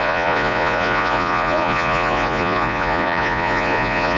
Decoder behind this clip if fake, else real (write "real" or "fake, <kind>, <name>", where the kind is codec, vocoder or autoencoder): fake, vocoder, Vocos